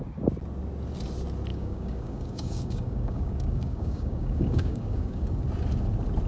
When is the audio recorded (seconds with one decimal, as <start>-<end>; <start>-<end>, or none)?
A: 0.0-1.5; 5.3-6.3